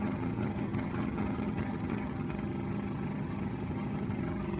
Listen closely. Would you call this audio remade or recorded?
remade